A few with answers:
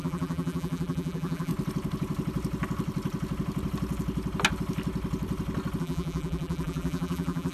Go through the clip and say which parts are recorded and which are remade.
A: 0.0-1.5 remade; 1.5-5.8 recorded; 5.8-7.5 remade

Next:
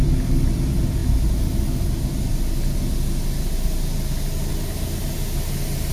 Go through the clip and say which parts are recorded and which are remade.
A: 0.0-5.9 recorded